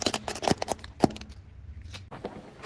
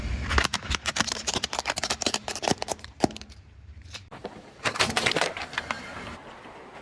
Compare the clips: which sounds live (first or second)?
first